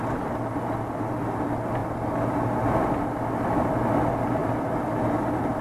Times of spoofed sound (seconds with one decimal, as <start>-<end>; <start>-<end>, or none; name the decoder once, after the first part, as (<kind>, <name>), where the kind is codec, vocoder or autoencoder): none